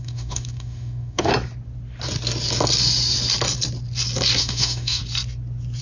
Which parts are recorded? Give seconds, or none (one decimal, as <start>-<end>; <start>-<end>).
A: 1.3-4.4; 5.0-5.8